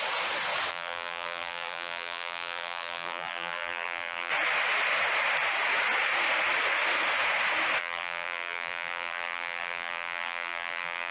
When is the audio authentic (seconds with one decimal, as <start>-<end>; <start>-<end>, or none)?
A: 0.0-0.7; 4.3-7.8